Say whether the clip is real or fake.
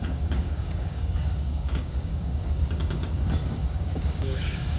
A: fake